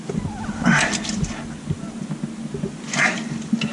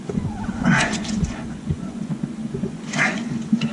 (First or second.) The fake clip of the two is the second